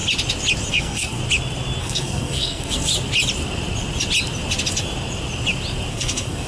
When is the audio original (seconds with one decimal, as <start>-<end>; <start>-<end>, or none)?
0.0-0.7; 1.2-1.8; 2.9-5.9